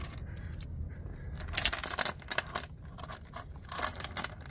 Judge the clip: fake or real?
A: real